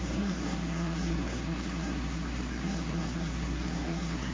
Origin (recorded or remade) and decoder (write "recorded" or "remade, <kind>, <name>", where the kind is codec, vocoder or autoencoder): remade, codec, SNAC